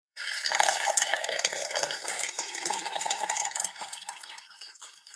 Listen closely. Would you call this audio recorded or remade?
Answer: remade